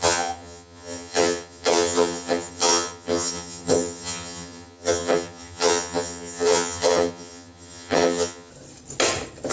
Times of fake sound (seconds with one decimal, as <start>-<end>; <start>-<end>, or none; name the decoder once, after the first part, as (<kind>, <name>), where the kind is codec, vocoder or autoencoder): 0.0-8.5 (vocoder, HiFi-GAN)